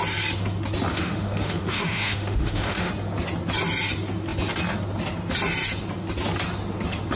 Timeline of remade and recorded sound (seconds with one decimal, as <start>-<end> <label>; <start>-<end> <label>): 0.0-0.9 recorded; 0.9-2.9 remade; 2.9-7.2 recorded